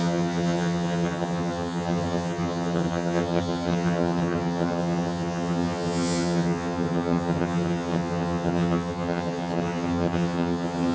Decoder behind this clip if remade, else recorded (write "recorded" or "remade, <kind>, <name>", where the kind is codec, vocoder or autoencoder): remade, vocoder, HiFi-GAN